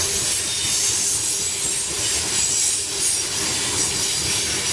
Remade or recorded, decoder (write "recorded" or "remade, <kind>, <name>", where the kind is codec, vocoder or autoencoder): recorded